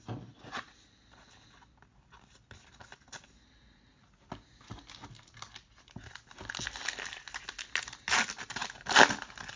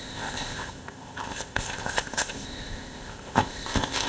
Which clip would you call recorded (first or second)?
first